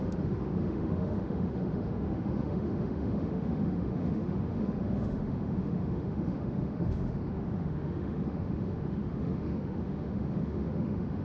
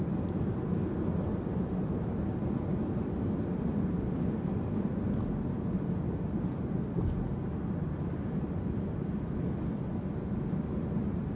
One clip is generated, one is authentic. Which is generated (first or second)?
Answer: first